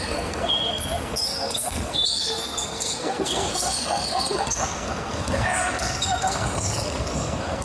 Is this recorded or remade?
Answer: remade